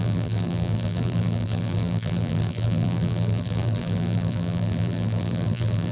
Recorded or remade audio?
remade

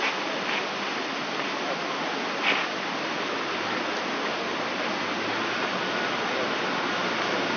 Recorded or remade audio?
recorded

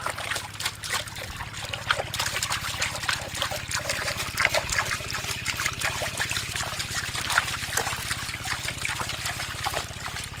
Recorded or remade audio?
recorded